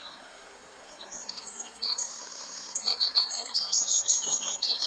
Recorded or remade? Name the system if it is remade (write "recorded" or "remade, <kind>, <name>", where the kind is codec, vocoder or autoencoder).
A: remade, codec, SNAC